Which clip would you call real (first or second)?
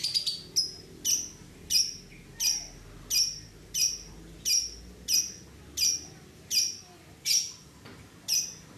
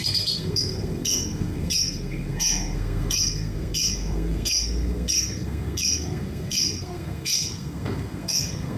first